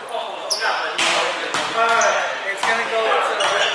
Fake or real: real